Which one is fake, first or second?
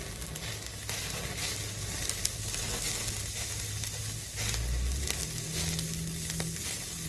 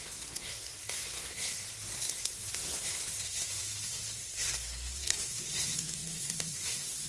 second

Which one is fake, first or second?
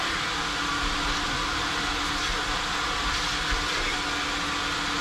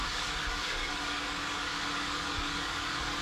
second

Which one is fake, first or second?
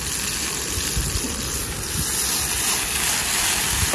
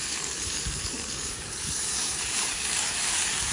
second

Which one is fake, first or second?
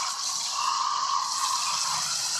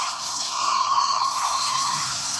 second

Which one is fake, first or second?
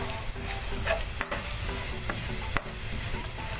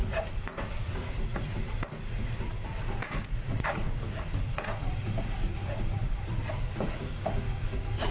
second